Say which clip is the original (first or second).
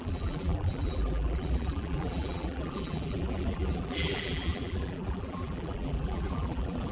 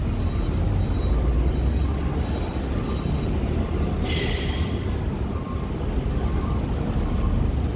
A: second